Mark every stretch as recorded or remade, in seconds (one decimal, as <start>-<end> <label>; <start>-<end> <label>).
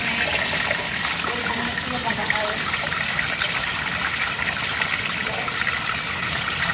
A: 0.0-2.0 recorded; 2.0-4.4 remade; 4.4-5.2 recorded; 5.2-6.7 remade